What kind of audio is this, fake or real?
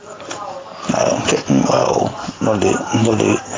real